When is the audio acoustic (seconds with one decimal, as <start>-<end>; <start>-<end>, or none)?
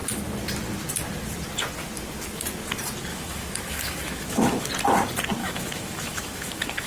0.0-3.1; 4.7-5.4